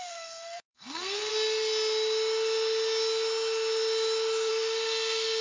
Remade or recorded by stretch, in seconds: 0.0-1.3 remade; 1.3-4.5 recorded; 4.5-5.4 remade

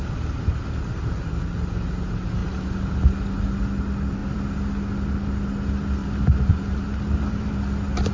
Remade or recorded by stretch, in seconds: 0.0-4.2 recorded; 4.2-4.7 remade; 4.7-6.0 recorded; 6.0-7.5 remade; 7.5-8.1 recorded

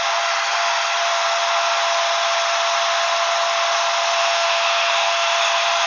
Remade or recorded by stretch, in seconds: 0.0-4.2 recorded; 4.2-5.4 remade; 5.4-5.9 recorded

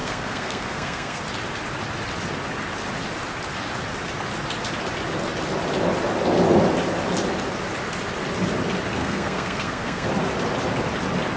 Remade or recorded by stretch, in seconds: 0.0-1.2 remade; 1.2-9.0 recorded; 9.0-10.1 remade; 10.1-11.4 recorded

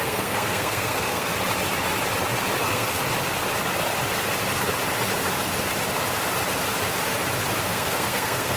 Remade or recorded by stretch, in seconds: 0.0-1.3 remade; 1.3-2.6 recorded; 2.6-3.0 remade; 3.0-7.6 recorded; 7.6-8.6 remade

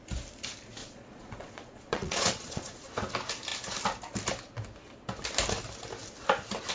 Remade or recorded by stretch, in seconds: 0.0-0.8 recorded; 0.8-2.9 remade; 2.9-6.7 recorded

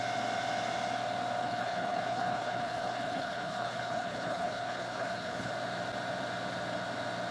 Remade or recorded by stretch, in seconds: 0.0-1.4 recorded; 1.4-5.5 remade; 5.5-7.3 recorded